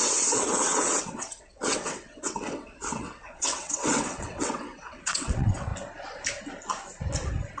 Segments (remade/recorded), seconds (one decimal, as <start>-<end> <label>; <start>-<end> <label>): 0.0-5.7 remade; 5.7-7.6 recorded